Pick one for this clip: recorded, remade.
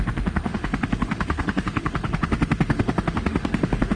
remade